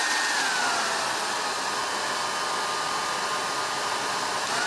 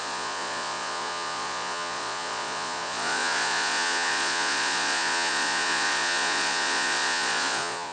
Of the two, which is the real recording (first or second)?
first